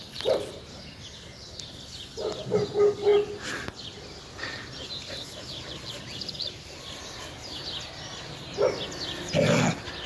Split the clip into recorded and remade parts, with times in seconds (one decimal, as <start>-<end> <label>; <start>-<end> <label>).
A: 0.0-10.1 recorded